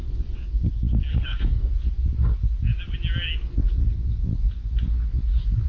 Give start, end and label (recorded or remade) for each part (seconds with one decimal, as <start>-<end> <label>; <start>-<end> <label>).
0.0-1.1 recorded; 1.1-1.7 remade; 1.7-5.7 recorded